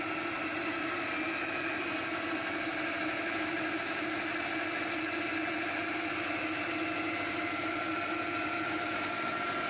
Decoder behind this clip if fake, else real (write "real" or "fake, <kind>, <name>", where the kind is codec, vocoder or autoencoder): real